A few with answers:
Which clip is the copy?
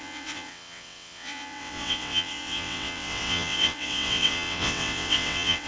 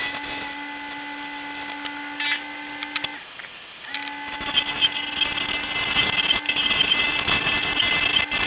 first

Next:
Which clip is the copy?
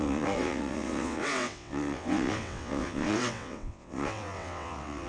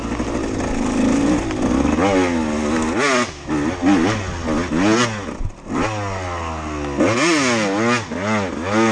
first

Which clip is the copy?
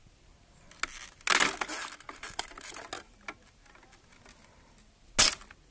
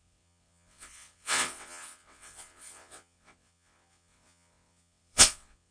second